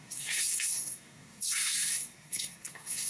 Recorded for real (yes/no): no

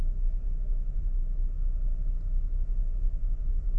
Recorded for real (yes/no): yes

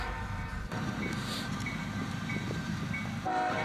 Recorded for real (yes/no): no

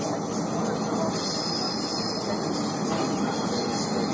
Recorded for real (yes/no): yes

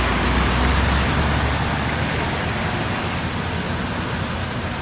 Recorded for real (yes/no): yes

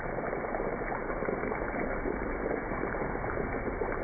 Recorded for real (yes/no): yes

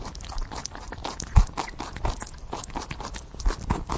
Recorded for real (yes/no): yes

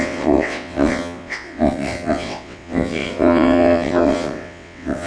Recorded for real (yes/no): no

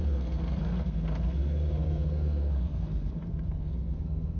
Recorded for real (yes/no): no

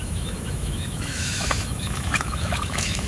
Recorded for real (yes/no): no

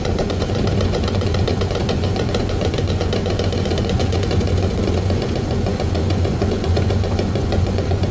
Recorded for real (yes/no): no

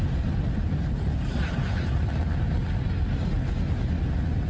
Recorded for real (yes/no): yes